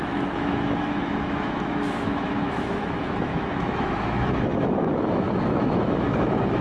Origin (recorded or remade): remade